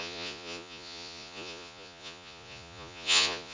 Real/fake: fake